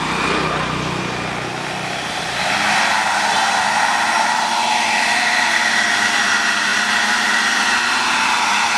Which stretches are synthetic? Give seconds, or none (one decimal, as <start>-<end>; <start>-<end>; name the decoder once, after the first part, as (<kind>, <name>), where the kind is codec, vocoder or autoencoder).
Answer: none